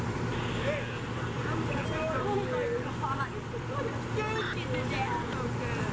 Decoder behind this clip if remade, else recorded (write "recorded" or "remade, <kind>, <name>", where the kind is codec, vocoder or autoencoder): recorded